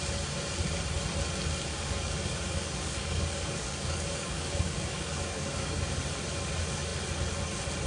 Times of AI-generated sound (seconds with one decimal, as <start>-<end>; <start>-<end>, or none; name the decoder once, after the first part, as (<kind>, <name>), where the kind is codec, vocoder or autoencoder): 1.7-6.0 (codec, DAC)

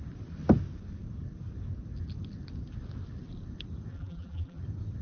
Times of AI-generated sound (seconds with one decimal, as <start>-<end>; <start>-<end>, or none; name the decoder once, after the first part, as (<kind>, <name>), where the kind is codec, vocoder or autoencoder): 3.9-4.6 (vocoder, BigVGAN v2)

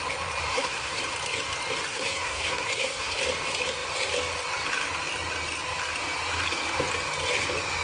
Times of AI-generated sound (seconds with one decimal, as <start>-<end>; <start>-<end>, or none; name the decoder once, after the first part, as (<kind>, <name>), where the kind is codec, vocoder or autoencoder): 0.5-1.0 (codec, SNAC); 1.9-3.2

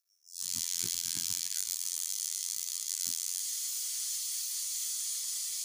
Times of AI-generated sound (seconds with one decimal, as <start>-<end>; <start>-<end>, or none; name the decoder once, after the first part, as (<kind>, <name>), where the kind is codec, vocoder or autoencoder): 0.0-3.4 (vocoder, BigVGAN v2)